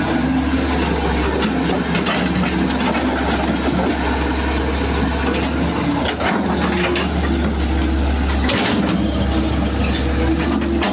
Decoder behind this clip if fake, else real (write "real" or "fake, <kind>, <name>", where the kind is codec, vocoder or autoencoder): real